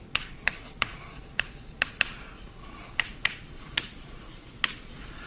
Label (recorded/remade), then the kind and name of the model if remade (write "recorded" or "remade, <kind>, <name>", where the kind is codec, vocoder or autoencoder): remade, vocoder, Vocos